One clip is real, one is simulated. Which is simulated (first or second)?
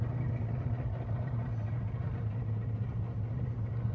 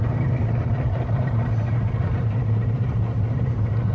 second